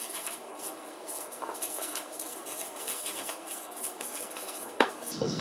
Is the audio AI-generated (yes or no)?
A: yes